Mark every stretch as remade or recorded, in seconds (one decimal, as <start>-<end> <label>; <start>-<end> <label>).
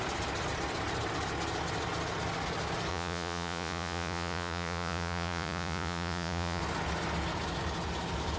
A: 0.0-2.9 recorded; 2.9-6.6 remade; 6.6-8.4 recorded